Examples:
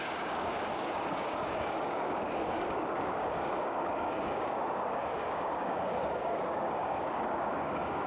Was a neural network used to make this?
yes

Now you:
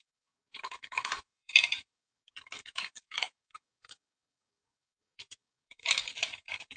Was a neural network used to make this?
yes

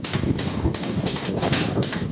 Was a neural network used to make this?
yes